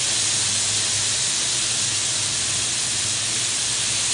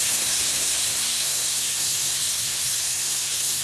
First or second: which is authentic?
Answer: first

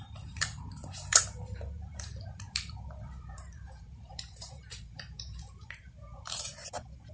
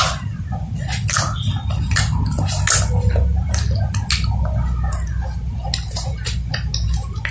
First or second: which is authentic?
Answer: second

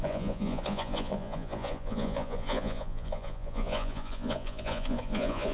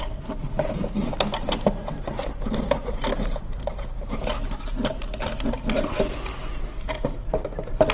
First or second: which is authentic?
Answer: second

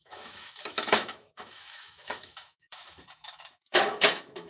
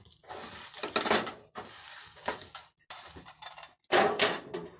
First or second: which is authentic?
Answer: second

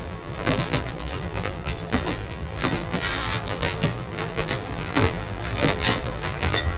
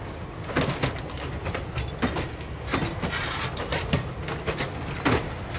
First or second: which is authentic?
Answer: second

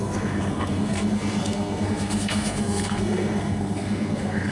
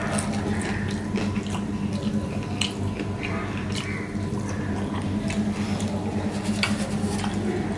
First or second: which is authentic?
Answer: second